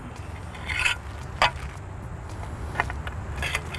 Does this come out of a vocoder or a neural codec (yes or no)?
no